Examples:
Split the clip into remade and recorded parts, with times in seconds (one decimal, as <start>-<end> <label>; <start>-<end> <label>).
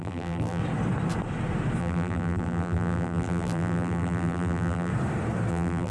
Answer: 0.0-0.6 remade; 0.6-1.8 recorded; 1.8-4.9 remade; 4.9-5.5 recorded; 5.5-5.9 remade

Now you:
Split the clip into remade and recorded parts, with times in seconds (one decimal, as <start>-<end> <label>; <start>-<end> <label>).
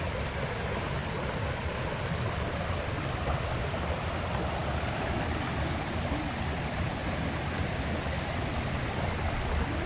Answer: 0.0-9.9 recorded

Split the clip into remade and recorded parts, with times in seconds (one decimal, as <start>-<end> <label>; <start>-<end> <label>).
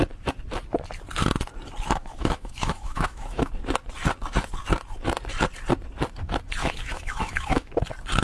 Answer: 0.0-2.0 recorded; 2.0-3.5 remade; 3.5-6.6 recorded; 6.6-7.7 remade; 7.7-8.2 recorded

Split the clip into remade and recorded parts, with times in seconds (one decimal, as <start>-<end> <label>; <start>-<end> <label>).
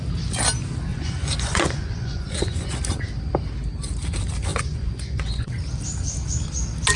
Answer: 0.0-0.9 recorded; 0.9-2.8 remade; 2.8-4.5 recorded; 4.5-5.5 remade; 5.5-7.0 recorded